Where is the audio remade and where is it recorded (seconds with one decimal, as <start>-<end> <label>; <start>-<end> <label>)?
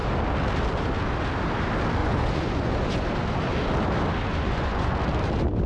0.0-2.0 recorded; 2.0-2.9 remade; 2.9-4.3 recorded; 4.3-5.0 remade; 5.0-5.7 recorded